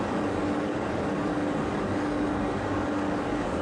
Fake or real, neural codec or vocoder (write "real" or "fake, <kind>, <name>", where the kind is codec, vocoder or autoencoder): fake, codec, DAC